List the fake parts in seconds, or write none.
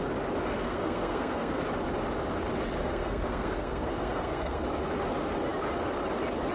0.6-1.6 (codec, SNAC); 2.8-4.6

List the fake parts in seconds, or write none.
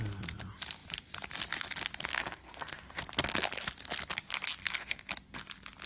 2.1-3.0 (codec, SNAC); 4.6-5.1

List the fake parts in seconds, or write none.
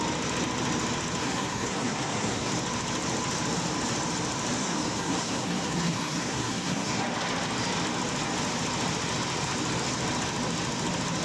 1.2-2.5 (codec, SNAC); 4.6-7.0